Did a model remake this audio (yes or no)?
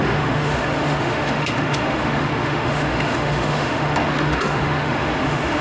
yes